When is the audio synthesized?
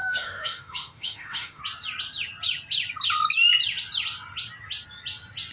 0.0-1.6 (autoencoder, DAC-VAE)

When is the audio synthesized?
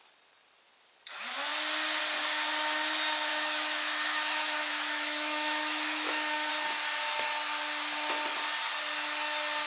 3.3-6.5 (autoencoder, DAC-VAE)